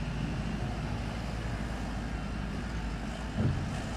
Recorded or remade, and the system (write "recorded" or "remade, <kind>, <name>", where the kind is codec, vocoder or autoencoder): recorded